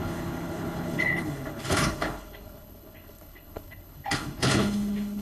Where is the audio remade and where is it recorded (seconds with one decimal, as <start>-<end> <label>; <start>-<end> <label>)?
0.0-5.2 remade